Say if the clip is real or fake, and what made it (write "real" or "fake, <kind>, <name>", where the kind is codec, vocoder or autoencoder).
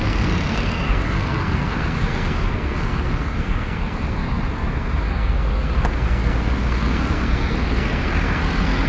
fake, codec, SNAC